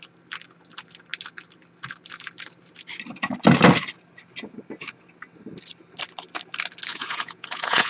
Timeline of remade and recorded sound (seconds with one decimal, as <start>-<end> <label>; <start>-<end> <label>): 0.0-6.9 recorded; 6.9-7.9 remade